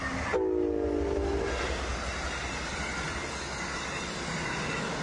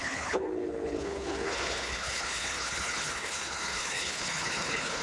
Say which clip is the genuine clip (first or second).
first